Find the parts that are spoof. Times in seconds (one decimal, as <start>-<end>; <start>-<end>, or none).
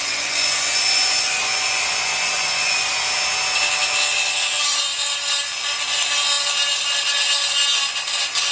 0.0-2.9